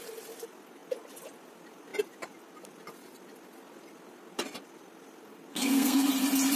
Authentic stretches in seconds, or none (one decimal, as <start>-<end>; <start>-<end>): 0.0-5.5; 6.1-6.6

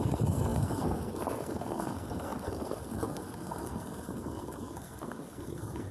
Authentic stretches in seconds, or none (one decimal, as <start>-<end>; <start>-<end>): none

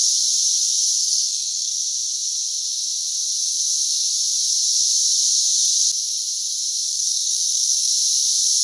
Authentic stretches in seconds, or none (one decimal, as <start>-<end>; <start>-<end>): 0.0-1.0; 1.7-6.9; 7.9-8.6

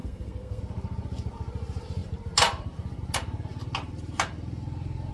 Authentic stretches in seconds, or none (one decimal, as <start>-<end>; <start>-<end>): 0.6-5.1